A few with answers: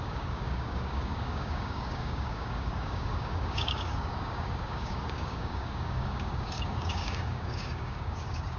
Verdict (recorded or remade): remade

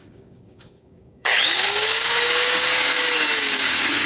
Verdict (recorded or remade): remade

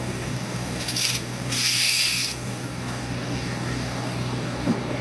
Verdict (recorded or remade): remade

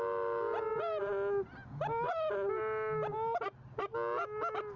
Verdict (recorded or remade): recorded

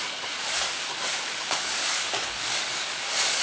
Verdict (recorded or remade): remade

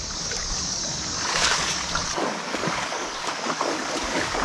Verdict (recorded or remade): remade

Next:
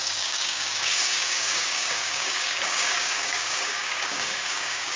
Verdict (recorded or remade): remade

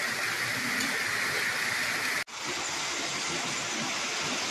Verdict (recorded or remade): recorded